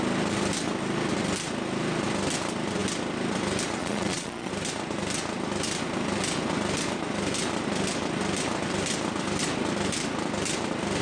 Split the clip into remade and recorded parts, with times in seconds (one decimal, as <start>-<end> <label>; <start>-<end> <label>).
0.0-3.8 recorded; 3.8-4.5 remade; 4.5-11.0 recorded